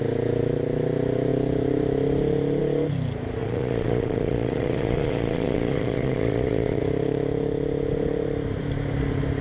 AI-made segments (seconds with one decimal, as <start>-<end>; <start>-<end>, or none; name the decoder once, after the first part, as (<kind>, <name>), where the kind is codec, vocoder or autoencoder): 3.4-6.8 (vocoder, Vocos)